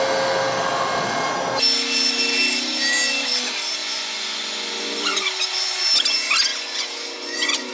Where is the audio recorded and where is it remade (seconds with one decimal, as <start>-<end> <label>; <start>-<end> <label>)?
0.0-3.8 recorded; 3.8-5.8 remade; 5.8-6.5 recorded; 6.5-7.7 remade